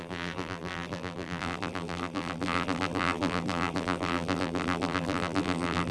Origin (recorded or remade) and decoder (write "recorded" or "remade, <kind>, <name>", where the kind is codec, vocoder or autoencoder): remade, vocoder, BigVGAN v2